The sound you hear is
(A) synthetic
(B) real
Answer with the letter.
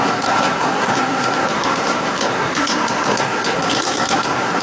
A